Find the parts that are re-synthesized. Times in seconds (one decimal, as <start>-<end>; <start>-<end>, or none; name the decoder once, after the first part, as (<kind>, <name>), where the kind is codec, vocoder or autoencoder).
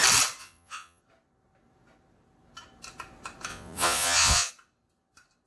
0.4-1.0 (vocoder, Vocos); 3.5-4.5